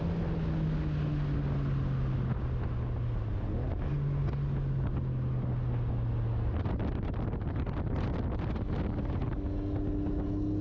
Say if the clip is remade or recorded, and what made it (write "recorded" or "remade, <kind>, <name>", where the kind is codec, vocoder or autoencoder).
recorded